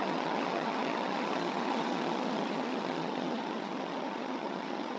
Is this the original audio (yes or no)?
no